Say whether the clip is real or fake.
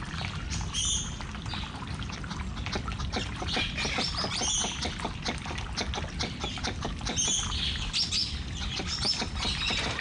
real